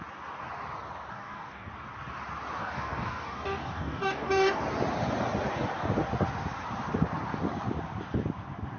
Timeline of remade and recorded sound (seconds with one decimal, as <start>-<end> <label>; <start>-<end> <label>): 0.0-1.1 recorded; 1.1-1.7 remade; 1.7-2.6 recorded; 2.6-4.6 remade; 4.6-8.8 recorded